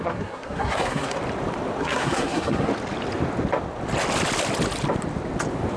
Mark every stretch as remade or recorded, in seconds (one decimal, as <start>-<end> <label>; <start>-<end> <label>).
0.0-1.2 remade; 1.2-1.8 recorded; 1.8-2.7 remade; 2.7-5.8 recorded